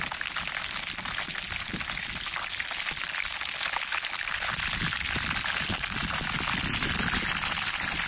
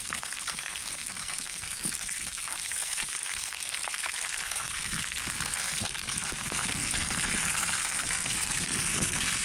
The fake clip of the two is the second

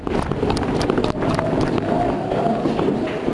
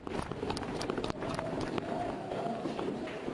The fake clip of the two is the second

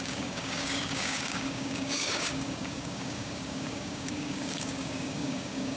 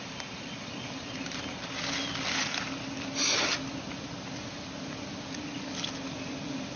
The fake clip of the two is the first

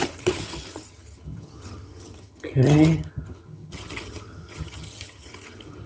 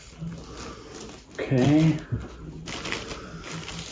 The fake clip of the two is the first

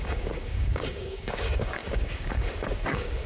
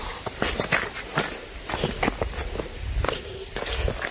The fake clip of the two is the first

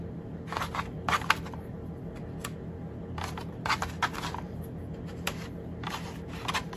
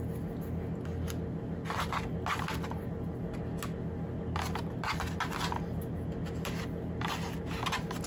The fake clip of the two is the first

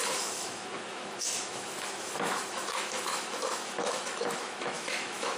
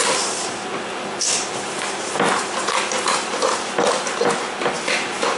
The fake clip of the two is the first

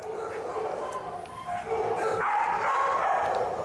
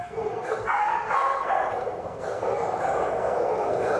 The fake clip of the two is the second